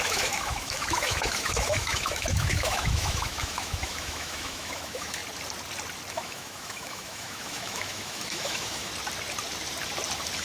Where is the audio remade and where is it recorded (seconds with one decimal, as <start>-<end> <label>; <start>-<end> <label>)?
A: 0.0-5.2 remade; 5.2-6.1 recorded; 6.1-8.9 remade; 8.9-10.4 recorded